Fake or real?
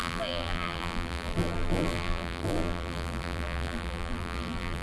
fake